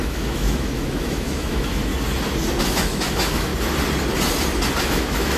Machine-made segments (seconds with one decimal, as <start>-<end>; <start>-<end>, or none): 0.0-1.9; 2.6-3.5; 4.8-5.4